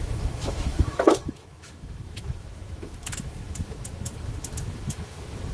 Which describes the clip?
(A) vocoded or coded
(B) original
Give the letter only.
A